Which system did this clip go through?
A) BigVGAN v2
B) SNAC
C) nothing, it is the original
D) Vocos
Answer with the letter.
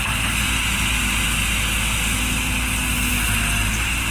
C